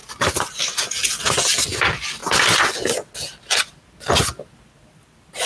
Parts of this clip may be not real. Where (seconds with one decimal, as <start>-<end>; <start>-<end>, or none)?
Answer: none